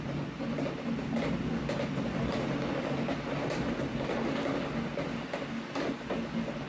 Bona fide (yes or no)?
yes